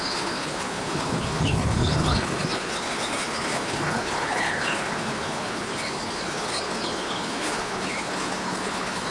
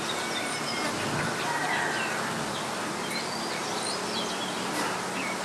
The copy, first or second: first